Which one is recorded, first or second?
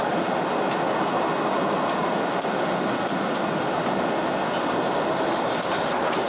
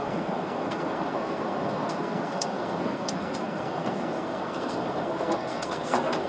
first